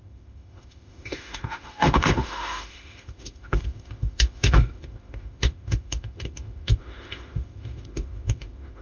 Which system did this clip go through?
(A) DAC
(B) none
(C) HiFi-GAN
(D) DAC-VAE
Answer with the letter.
D